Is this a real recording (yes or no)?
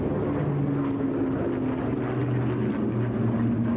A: yes